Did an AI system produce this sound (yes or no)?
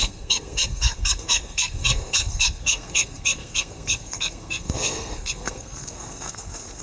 yes